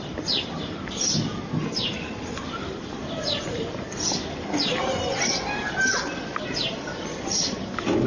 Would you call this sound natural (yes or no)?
no